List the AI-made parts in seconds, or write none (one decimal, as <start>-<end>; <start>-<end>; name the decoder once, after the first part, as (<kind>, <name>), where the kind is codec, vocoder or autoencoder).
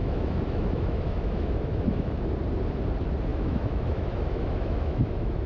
0.0-2.2 (autoencoder, DAC-VAE); 3.3-5.5